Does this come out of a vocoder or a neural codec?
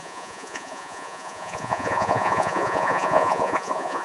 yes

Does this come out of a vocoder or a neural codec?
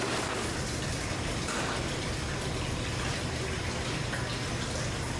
no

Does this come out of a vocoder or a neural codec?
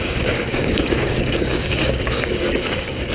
yes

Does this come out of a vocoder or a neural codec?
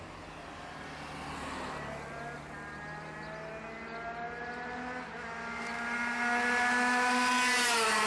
no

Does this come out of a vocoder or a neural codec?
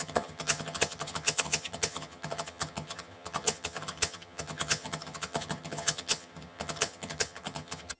yes